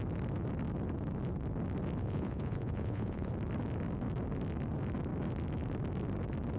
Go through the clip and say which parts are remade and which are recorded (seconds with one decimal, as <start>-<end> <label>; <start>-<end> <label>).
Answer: 0.0-2.0 recorded; 2.0-3.3 remade; 3.3-6.6 recorded